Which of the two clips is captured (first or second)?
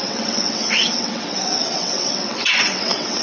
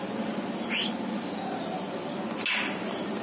second